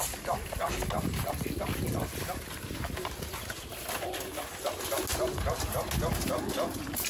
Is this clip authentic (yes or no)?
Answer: yes